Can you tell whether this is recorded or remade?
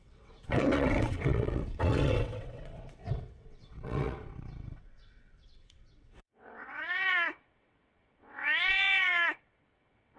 remade